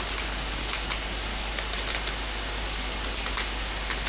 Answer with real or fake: real